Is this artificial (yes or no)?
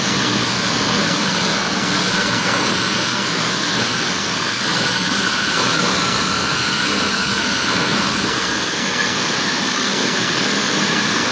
yes